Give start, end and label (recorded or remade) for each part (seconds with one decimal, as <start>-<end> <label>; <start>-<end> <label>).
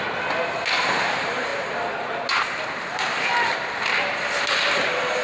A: 0.0-5.2 recorded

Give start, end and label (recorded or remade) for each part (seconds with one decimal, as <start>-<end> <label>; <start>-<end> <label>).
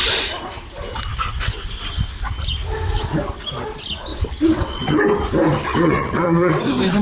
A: 0.0-4.1 recorded; 4.1-5.0 remade; 5.0-5.7 recorded; 5.7-6.6 remade; 6.6-7.0 recorded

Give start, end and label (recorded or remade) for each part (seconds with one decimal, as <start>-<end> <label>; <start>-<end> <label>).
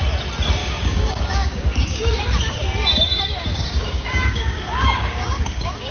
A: 0.0-0.6 recorded; 0.6-2.2 remade; 2.2-2.9 recorded; 2.9-5.9 remade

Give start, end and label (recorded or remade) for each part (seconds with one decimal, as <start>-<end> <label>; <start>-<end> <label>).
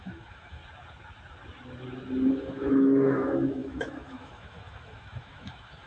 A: 0.0-0.6 remade; 0.6-2.3 recorded; 2.3-5.9 remade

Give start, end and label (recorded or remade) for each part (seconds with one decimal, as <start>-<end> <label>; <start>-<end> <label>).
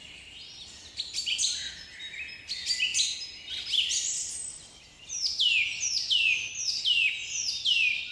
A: 0.0-8.1 recorded